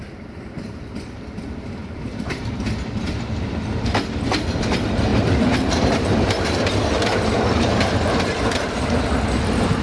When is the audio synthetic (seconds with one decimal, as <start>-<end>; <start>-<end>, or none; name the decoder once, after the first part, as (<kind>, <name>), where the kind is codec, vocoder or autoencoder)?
1.8-2.6 (vocoder, BigVGAN v2); 5.1-7.7